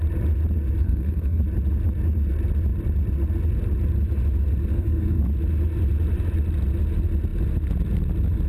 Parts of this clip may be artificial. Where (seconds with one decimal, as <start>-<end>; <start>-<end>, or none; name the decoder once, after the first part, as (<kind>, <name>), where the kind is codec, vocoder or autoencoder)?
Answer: 0.8-1.4 (codec, SNAC); 4.7-5.2